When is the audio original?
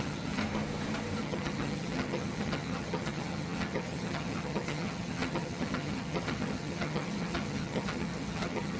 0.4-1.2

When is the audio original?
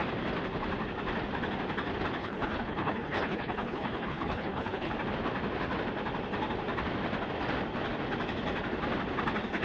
0.0-2.2; 4.9-9.6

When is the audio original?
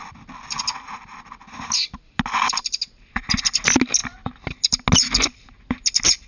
0.0-6.3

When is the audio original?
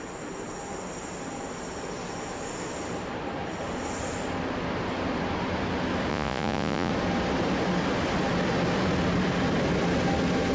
0.0-6.1; 6.9-10.5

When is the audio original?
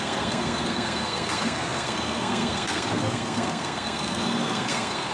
none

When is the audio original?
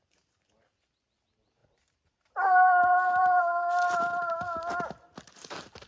0.0-1.6; 4.2-5.9